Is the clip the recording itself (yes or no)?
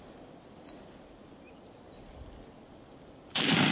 yes